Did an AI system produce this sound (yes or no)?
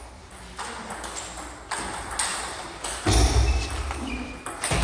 no